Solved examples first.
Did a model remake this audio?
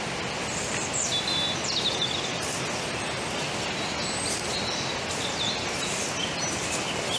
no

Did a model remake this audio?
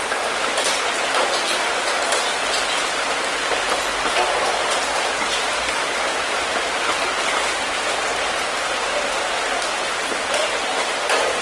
no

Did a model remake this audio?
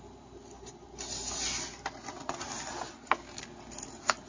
no